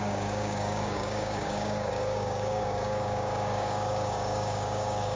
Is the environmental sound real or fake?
fake